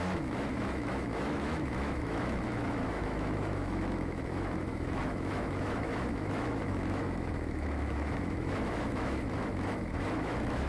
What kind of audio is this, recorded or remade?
remade